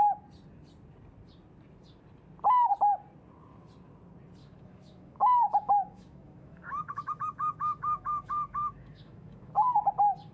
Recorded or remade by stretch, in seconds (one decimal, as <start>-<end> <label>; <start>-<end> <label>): 0.0-4.4 recorded; 4.4-9.5 remade; 9.5-10.3 recorded